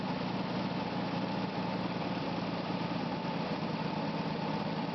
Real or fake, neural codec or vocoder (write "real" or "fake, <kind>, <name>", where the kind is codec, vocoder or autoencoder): real